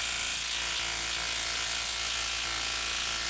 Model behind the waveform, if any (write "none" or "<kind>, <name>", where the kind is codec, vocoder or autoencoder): none